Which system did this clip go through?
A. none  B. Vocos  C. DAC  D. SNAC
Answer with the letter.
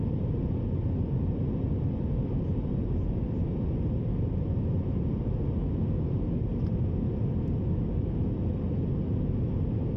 A